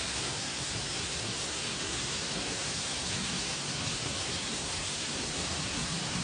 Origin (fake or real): fake